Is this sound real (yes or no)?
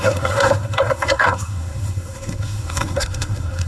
no